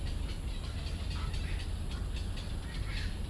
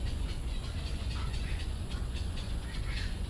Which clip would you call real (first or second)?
first